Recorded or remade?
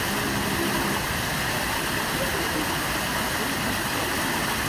recorded